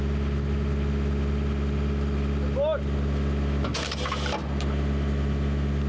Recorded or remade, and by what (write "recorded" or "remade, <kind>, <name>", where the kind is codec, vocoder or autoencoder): recorded